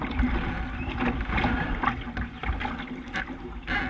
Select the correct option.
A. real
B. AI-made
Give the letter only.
A